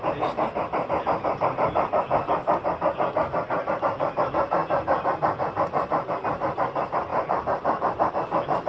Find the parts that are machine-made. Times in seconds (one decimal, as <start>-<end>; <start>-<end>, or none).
none